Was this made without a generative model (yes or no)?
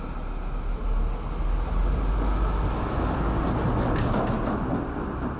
yes